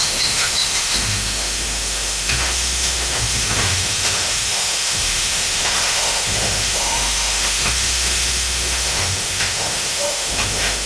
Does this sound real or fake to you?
fake